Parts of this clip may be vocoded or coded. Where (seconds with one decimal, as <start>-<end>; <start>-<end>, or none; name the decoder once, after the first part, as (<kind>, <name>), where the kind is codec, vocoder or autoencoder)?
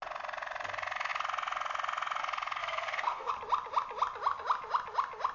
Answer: 2.6-3.3 (codec, SNAC)